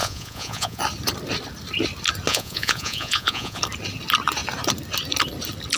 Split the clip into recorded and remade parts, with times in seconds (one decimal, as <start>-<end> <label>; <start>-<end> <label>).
0.0-0.8 remade; 0.8-2.3 recorded; 2.3-3.6 remade; 3.6-5.8 recorded